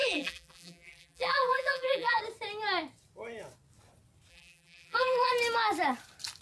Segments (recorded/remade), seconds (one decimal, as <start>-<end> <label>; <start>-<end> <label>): 0.0-2.2 remade; 2.2-4.3 recorded; 4.3-5.3 remade; 5.3-6.4 recorded